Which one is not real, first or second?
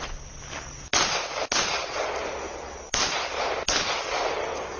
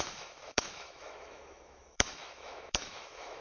second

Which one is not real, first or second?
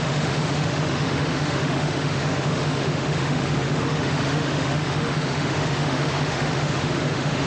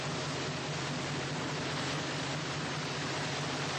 first